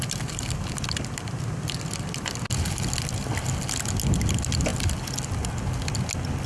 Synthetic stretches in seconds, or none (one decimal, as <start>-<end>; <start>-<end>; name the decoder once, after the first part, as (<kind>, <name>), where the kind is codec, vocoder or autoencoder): none